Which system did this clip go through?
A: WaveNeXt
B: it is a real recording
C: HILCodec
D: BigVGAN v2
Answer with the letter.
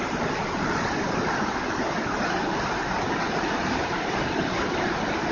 B